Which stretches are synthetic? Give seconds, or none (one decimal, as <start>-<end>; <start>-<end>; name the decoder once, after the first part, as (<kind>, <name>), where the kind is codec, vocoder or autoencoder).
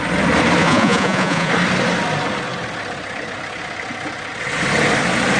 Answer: 0.6-1.5 (vocoder, Vocos)